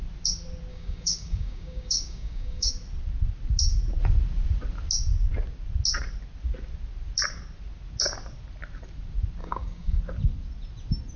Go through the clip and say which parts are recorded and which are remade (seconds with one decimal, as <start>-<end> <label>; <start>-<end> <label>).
0.0-0.7 recorded; 0.7-2.7 remade; 2.7-9.4 recorded; 9.4-10.0 remade; 10.0-11.2 recorded